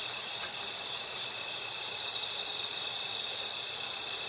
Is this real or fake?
real